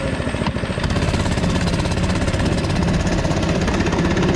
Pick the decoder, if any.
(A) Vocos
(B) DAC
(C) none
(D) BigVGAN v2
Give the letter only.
C